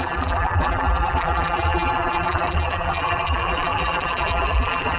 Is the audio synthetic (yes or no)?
yes